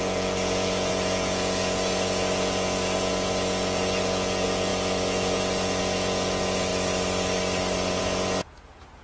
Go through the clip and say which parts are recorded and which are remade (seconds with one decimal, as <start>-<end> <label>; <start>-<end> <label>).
0.0-6.7 remade; 6.7-8.0 recorded; 8.0-9.0 remade

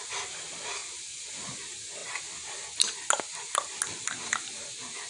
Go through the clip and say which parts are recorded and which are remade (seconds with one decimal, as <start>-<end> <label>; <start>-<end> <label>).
0.0-5.1 recorded

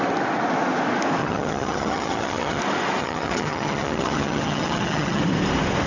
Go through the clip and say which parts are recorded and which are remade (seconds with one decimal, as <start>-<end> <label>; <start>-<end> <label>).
0.0-1.2 recorded; 1.2-2.6 remade; 2.6-3.0 recorded; 3.0-5.2 remade; 5.2-5.9 recorded

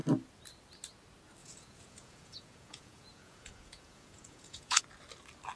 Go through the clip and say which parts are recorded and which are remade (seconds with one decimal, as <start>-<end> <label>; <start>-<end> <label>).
0.0-1.4 recorded; 1.4-4.8 remade; 4.8-5.6 recorded